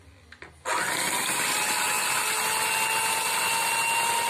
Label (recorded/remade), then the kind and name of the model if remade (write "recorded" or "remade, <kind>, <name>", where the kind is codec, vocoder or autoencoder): recorded